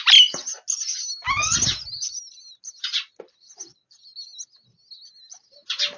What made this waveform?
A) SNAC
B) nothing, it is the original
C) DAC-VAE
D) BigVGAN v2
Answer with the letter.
B